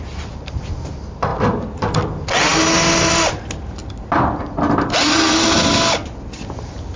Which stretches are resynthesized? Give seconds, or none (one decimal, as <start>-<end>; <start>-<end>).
none